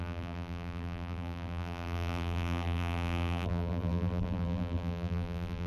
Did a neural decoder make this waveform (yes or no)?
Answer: yes